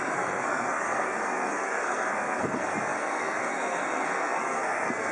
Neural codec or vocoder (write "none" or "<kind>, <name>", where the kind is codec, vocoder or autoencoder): codec, SNAC